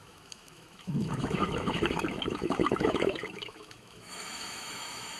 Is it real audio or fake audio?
fake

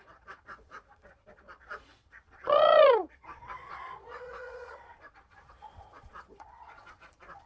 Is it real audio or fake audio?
fake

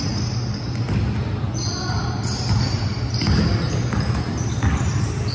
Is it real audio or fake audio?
real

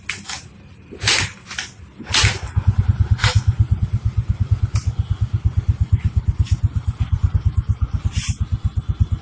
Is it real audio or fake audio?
real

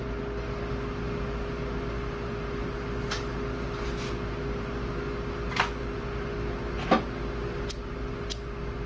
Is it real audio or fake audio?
real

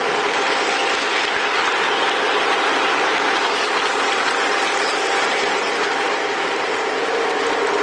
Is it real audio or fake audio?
real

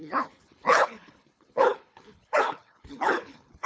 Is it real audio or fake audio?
fake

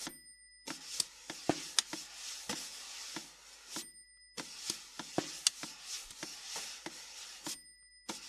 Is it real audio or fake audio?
real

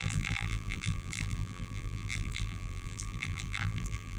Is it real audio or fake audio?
fake